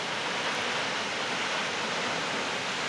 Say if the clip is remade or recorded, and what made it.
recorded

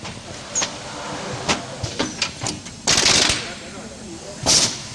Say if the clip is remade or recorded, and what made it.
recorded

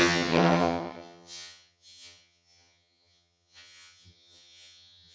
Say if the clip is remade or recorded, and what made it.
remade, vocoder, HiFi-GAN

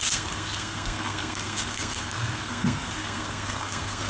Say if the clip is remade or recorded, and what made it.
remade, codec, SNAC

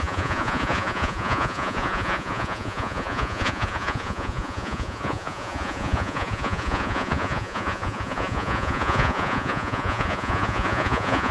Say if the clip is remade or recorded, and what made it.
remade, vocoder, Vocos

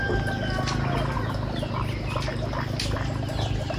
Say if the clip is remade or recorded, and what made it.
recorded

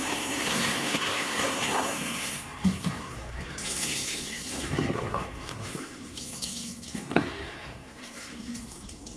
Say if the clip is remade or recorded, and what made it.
remade, codec, SNAC